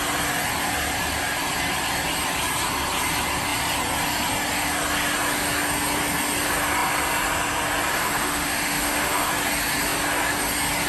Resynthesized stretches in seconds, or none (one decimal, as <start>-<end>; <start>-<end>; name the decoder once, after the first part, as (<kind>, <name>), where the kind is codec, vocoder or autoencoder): 7.9-9.3 (autoencoder, DAC-VAE)